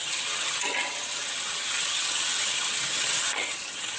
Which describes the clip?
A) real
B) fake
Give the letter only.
B